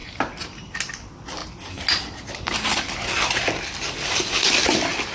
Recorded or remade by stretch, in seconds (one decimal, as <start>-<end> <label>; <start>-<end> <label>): 0.0-0.7 remade; 0.7-5.1 recorded